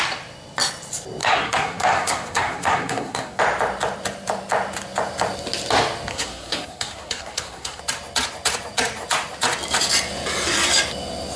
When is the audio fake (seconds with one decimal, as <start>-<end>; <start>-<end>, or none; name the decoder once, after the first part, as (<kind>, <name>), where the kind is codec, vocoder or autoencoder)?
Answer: 1.2-3.4 (codec, SNAC); 6.1-7.8